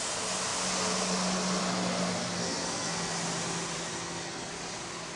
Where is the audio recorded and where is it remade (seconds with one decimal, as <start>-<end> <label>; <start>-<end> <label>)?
0.0-2.4 recorded; 2.4-3.1 remade; 3.1-3.9 recorded; 3.9-4.5 remade; 4.5-5.2 recorded